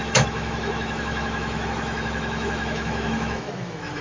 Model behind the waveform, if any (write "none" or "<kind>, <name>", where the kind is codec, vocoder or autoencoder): autoencoder, DAC-VAE